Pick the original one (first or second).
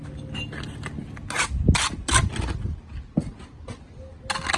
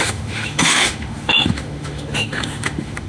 first